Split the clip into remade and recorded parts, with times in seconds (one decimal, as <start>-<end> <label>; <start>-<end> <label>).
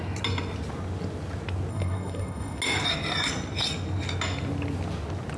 0.0-1.7 recorded; 1.7-2.6 remade; 2.6-5.4 recorded